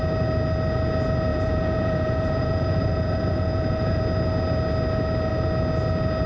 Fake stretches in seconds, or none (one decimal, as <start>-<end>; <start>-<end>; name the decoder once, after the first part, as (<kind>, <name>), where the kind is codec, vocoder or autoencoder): 1.3-4.0 (vocoder, Vocos)